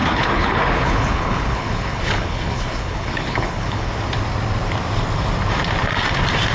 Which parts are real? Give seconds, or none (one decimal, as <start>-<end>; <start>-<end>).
3.9-6.5